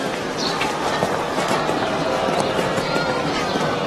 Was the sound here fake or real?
fake